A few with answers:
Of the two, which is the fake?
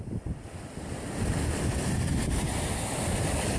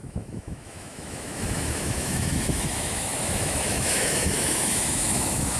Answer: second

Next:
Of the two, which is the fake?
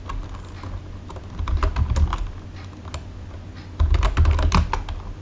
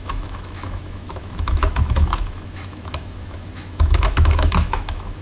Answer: second